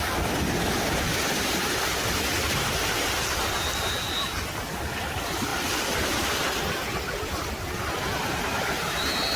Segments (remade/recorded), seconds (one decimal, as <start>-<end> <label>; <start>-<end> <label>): 0.0-9.4 recorded